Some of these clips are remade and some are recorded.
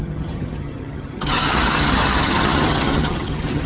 remade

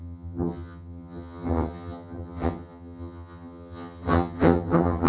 remade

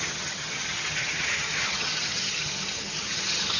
remade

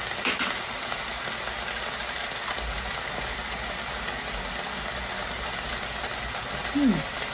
recorded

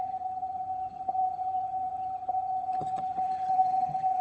remade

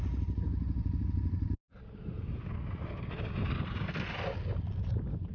recorded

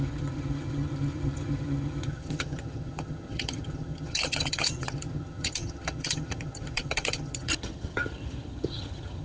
remade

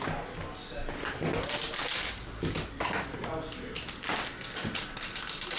recorded